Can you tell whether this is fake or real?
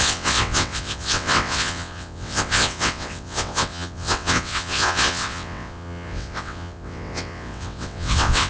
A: fake